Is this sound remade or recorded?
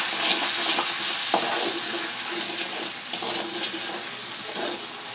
recorded